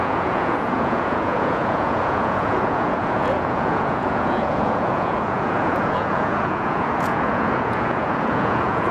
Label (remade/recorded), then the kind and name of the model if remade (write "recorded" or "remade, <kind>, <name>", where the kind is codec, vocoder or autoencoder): remade, vocoder, Vocos